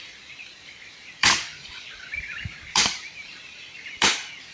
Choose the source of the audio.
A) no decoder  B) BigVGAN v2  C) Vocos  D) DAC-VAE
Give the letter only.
B